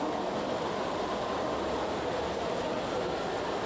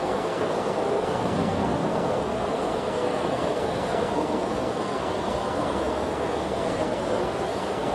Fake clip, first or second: second